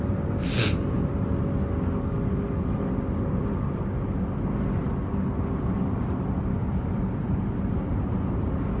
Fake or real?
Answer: real